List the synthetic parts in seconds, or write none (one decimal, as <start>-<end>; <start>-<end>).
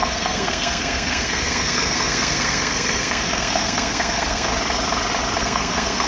0.0-4.5; 5.4-6.1